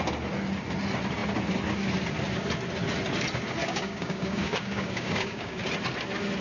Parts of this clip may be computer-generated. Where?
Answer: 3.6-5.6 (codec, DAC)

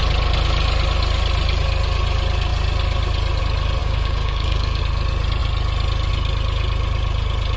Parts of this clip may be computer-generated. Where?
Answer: 3.8-4.8 (codec, DAC)

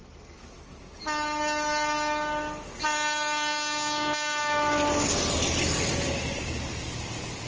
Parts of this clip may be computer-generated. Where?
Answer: none

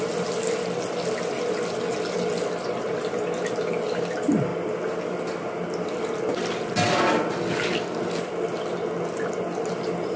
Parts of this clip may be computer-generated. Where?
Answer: none

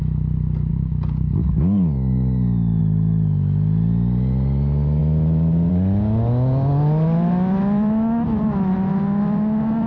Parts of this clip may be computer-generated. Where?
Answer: 0.7-2.8 (codec, DAC)

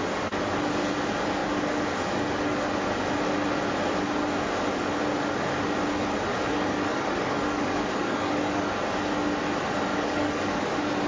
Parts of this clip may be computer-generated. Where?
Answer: 6.3-8.7 (codec, DAC); 9.9-10.7